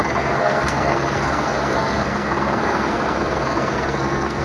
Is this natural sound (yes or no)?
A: no